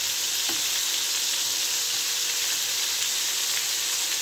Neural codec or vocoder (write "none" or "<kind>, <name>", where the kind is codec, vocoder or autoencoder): none